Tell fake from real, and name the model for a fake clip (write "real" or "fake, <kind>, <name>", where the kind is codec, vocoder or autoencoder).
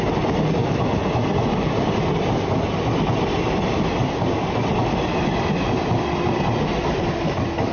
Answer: real